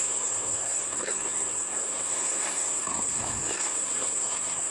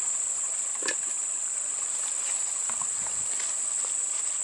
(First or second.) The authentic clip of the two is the second